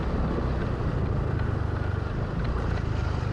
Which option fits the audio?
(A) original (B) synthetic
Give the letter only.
A